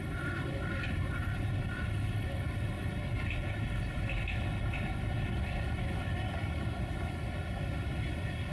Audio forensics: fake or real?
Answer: real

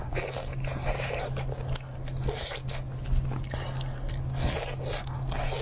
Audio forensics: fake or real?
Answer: real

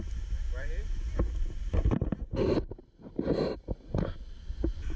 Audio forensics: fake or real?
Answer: real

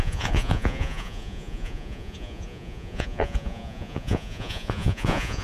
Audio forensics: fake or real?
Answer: fake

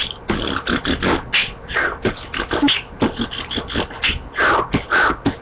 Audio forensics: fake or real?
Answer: real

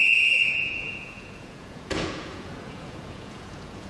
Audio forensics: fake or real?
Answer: fake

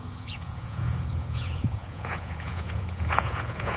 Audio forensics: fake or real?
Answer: fake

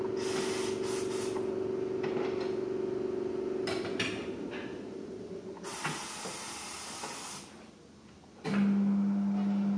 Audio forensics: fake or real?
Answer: real